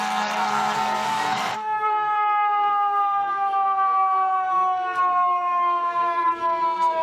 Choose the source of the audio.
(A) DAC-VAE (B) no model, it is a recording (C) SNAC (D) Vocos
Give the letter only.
C